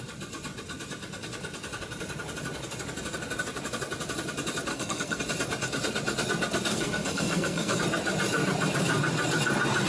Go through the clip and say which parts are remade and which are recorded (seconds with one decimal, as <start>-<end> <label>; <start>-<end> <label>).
0.0-4.7 recorded; 4.7-5.2 remade; 5.2-6.7 recorded; 6.7-7.8 remade; 7.8-9.9 recorded